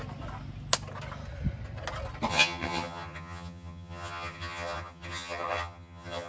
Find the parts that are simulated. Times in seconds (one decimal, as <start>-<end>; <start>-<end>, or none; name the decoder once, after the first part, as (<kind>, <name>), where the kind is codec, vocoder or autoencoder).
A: 2.3-6.3 (vocoder, HiFi-GAN)